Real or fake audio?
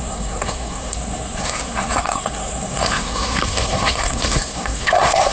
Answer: fake